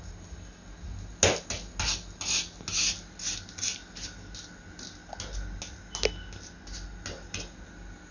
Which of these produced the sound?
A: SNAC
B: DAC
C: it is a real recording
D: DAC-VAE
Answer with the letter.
C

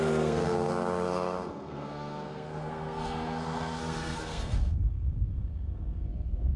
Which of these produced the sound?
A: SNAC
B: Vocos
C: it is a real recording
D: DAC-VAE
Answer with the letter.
A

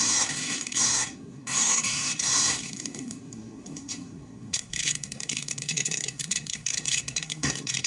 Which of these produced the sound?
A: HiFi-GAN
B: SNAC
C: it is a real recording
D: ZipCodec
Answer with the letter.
B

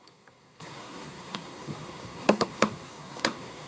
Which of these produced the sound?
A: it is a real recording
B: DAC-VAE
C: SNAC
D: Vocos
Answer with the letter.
C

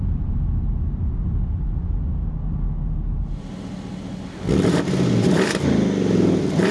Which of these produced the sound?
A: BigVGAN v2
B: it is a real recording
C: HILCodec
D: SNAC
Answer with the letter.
B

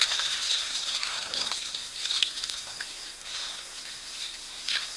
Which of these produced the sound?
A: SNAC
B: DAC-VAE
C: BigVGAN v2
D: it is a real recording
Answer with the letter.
A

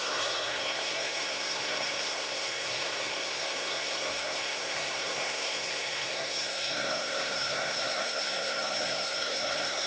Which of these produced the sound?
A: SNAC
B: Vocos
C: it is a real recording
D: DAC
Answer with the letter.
A